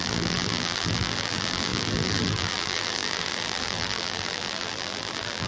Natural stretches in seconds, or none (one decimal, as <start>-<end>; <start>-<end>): none